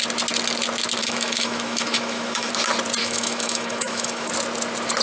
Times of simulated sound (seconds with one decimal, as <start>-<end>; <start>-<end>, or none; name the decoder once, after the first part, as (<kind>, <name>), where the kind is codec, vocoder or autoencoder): 1.0-2.5 (autoencoder, DAC-VAE); 3.0-4.3